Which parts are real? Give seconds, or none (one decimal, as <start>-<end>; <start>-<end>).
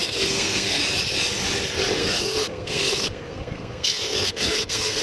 0.8-2.0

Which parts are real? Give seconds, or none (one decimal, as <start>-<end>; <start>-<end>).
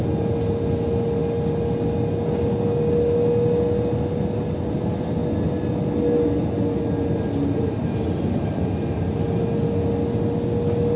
0.0-11.0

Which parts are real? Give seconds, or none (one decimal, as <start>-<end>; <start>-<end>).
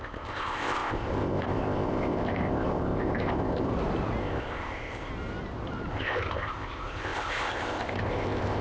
3.7-4.2; 5.1-5.9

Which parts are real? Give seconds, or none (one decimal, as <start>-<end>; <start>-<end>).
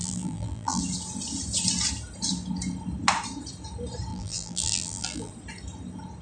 0.8-4.1; 5.3-6.2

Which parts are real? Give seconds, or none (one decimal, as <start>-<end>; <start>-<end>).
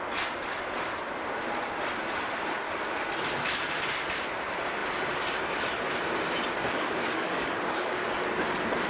0.0-6.6; 8.1-8.9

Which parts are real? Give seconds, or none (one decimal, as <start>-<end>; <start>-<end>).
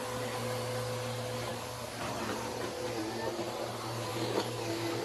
0.0-1.5; 2.0-4.1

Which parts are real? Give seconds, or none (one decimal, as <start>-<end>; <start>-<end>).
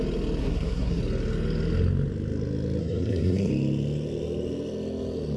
0.0-0.4; 1.0-2.8; 3.5-5.4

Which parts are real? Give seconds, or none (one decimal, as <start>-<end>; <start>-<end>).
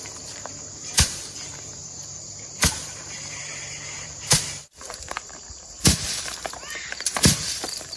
none